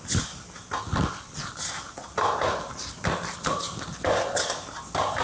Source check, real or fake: real